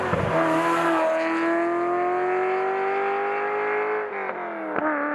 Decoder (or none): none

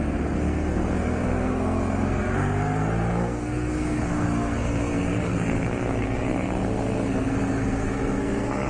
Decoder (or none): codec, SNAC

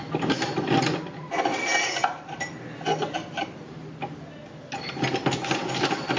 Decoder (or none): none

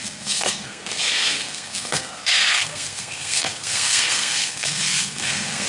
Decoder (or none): codec, SNAC